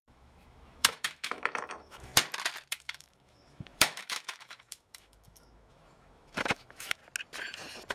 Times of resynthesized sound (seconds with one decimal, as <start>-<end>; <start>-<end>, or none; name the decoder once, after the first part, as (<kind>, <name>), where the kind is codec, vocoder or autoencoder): 0.0-2.1 (autoencoder, DAC-VAE); 2.7-7.0